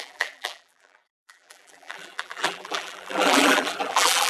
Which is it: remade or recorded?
remade